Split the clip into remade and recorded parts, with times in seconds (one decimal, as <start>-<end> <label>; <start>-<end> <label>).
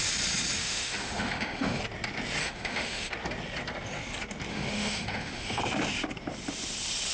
0.0-0.6 recorded; 0.6-1.8 remade; 1.8-2.4 recorded; 2.4-3.1 remade; 3.1-4.5 recorded; 4.5-5.6 remade; 5.6-7.1 recorded